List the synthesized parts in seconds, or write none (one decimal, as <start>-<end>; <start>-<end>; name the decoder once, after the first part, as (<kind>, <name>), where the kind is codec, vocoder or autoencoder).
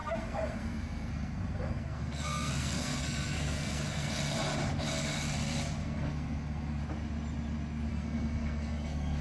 0.0-4.1 (codec, SNAC); 5.8-6.8; 7.9-9.2